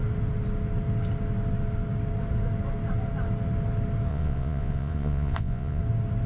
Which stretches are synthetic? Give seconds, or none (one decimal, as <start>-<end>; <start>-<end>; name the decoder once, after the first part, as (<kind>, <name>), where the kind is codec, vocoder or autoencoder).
4.1-5.8 (vocoder, Vocos)